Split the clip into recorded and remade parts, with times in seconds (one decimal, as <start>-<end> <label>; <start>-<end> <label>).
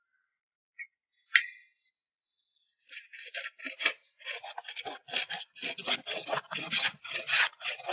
0.0-7.9 recorded